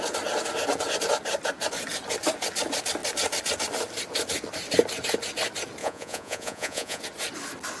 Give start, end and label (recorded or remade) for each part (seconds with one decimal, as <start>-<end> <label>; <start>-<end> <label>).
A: 0.0-5.8 recorded; 5.8-7.0 remade; 7.0-7.8 recorded